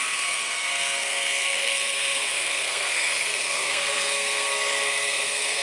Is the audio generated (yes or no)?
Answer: yes